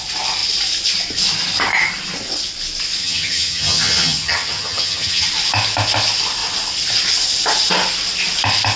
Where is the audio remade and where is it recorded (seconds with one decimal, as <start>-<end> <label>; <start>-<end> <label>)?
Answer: 0.0-3.0 recorded; 3.0-5.3 remade; 5.3-8.8 recorded